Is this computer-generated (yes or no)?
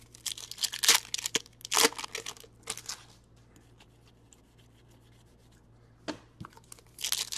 no